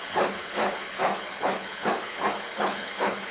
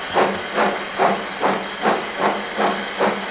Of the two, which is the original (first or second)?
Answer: second